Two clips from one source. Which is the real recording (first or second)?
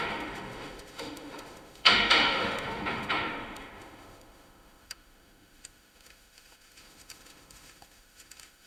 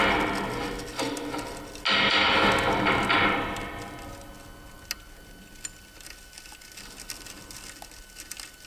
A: second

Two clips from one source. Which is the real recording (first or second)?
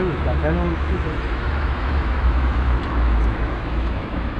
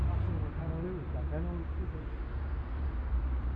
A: second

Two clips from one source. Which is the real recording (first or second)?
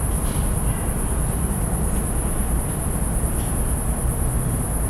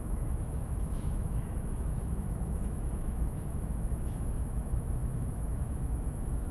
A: first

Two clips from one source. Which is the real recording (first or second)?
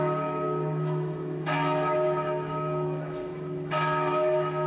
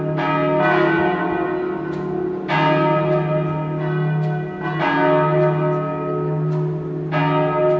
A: second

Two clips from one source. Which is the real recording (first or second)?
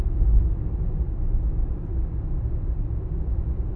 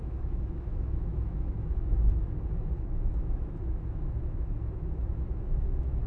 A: first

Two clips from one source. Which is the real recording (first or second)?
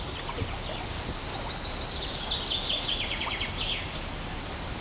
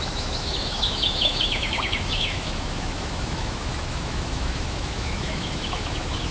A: first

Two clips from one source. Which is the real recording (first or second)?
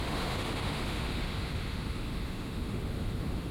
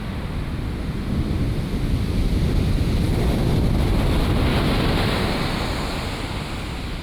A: second